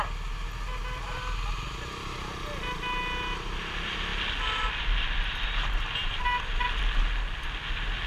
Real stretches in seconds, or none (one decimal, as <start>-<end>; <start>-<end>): 0.0-8.1